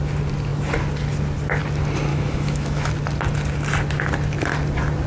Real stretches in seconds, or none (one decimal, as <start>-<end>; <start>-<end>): 0.0-2.1; 2.9-5.1